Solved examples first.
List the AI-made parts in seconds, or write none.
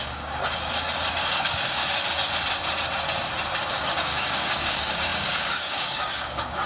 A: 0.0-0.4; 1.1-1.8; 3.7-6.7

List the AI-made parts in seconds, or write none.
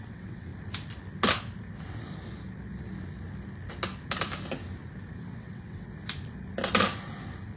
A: 0.0-0.5; 5.1-5.9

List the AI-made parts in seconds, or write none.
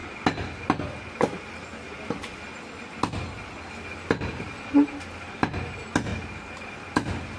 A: none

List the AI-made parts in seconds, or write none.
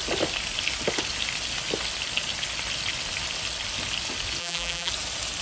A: 4.4-4.9